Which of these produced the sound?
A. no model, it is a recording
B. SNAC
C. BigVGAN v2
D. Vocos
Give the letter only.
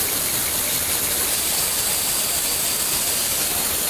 A